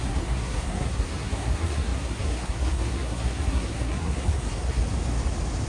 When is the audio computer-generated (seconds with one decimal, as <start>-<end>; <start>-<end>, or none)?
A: 0.0-4.8